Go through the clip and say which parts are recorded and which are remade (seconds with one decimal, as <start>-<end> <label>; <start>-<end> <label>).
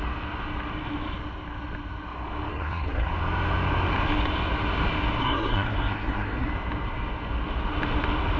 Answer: 0.0-2.5 recorded; 2.5-3.1 remade; 3.1-5.2 recorded; 5.2-6.5 remade; 6.5-8.4 recorded